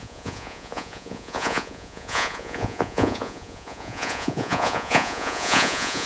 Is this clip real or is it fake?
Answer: fake